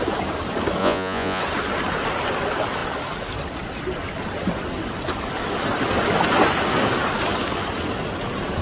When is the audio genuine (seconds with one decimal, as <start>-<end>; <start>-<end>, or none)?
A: 0.0-0.8; 1.4-8.6